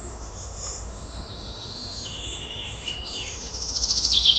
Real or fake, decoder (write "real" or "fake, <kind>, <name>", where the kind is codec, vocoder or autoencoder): fake, autoencoder, DAC-VAE